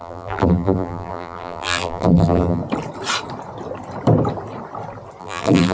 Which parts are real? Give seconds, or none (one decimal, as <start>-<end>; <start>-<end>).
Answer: 2.6-5.2